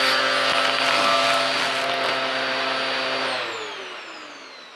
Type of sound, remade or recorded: recorded